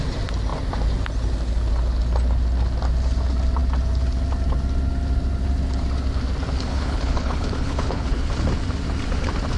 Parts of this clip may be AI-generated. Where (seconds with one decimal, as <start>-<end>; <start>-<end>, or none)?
6.7-8.3